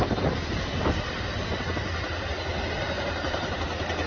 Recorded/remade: recorded